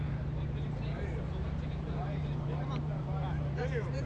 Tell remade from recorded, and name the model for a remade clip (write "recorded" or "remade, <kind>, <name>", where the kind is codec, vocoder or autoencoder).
remade, vocoder, BigVGAN v2